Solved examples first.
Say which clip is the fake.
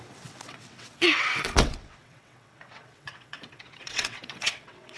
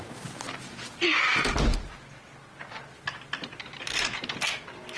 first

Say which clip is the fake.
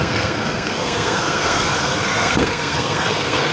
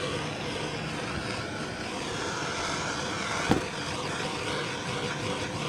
first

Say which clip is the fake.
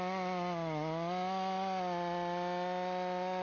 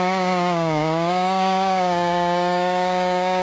second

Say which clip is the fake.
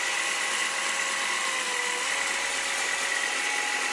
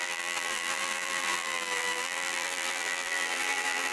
second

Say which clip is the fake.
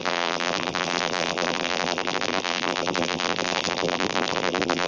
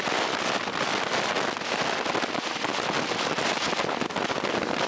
first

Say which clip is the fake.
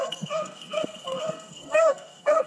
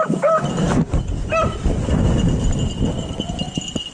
first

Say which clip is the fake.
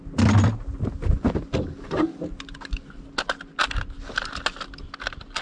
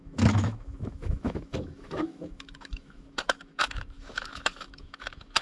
second